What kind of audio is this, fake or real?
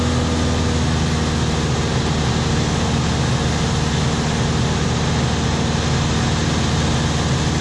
real